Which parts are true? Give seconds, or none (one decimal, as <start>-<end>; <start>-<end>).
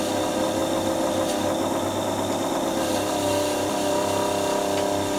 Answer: 0.0-5.2